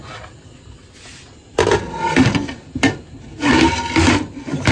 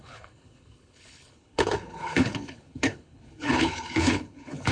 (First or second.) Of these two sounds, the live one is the first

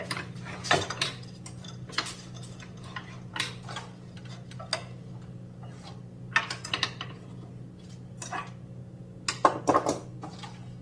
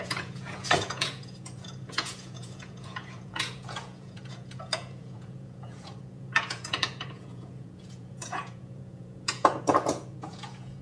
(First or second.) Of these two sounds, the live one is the first